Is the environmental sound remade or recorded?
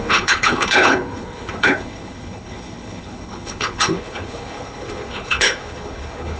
remade